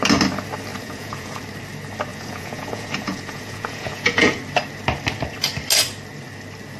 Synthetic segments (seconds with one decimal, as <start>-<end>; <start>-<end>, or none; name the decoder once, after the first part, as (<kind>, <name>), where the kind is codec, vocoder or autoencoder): 0.7-1.4 (vocoder, Vocos); 2.1-4.4